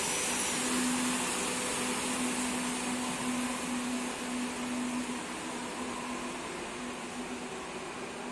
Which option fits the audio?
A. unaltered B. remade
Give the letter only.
A